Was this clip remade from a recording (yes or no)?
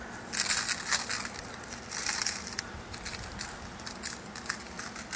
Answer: no